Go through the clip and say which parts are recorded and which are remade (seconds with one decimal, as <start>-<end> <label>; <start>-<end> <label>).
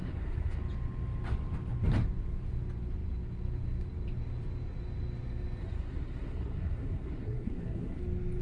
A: 0.0-0.6 remade; 0.6-5.6 recorded; 5.6-8.0 remade; 8.0-8.4 recorded